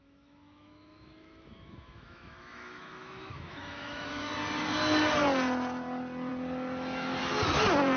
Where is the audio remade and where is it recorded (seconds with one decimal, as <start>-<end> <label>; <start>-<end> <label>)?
0.0-4.3 remade; 4.3-8.0 recorded